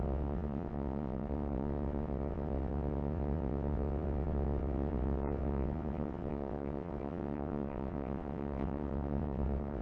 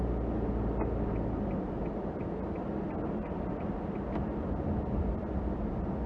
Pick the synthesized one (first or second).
first